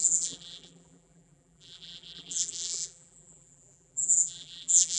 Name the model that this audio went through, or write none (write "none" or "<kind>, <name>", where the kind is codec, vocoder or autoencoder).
vocoder, BigVGAN v2